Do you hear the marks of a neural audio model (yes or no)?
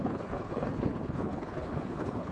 yes